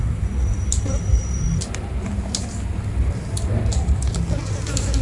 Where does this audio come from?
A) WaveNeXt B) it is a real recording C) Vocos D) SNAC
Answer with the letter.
B